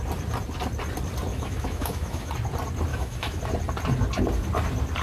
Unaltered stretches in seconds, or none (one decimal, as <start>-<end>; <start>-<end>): 0.0-1.3; 2.3-2.9; 3.4-5.0